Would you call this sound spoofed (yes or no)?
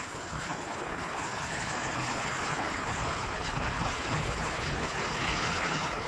yes